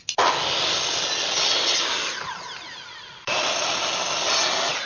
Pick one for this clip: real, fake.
real